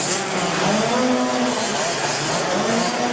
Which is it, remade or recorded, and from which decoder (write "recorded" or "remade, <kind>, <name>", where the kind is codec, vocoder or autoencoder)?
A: recorded